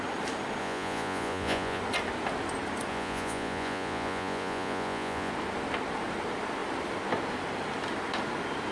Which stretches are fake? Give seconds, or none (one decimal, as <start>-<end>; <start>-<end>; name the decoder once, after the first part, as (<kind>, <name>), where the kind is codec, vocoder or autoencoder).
0.6-1.8 (vocoder, Vocos); 2.9-5.3